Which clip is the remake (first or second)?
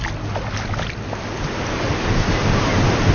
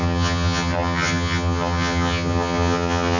second